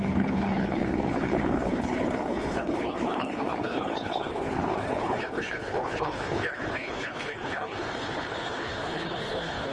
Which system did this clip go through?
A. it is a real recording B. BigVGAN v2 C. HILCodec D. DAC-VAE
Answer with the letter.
C